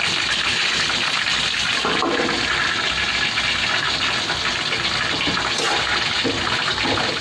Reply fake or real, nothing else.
real